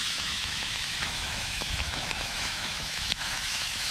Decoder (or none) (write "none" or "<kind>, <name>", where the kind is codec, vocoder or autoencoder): autoencoder, DAC-VAE